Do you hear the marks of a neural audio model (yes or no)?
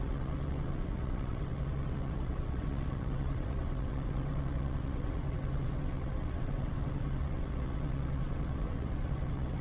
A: yes